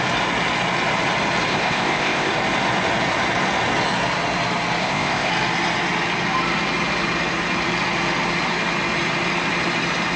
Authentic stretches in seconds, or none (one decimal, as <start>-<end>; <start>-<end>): 0.0-1.5; 2.3-4.8; 5.3-10.2